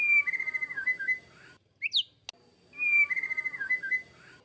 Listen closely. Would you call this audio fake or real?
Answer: real